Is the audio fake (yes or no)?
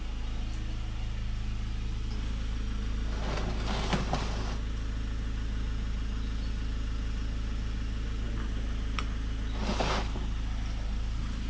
no